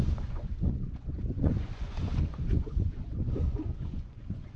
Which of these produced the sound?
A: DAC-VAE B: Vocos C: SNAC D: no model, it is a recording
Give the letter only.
B